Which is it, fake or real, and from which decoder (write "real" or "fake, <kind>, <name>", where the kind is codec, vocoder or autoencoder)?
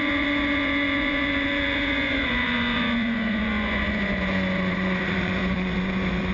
fake, vocoder, Vocos